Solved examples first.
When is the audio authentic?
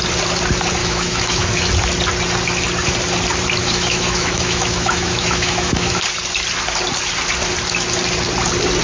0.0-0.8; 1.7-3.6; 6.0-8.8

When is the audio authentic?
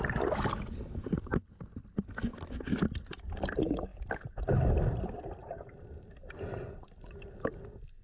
0.0-8.0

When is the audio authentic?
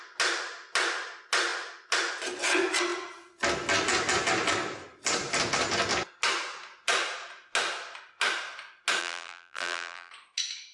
0.0-9.0; 10.1-10.7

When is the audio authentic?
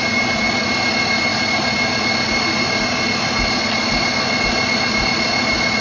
0.0-5.8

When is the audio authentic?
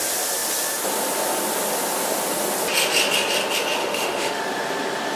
0.0-3.8; 4.4-5.2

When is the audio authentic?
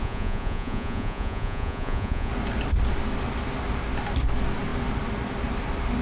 2.3-6.0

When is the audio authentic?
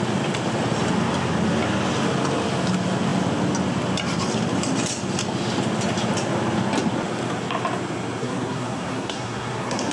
0.0-8.2